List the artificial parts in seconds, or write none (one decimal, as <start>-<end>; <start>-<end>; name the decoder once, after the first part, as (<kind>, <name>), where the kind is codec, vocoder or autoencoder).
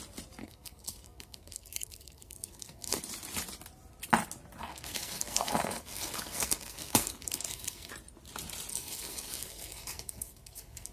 0.4-3.0 (codec, SNAC); 4.6-7.9; 8.7-10.9